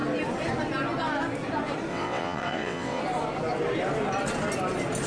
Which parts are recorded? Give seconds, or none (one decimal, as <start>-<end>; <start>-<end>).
0.0-1.9; 3.0-5.1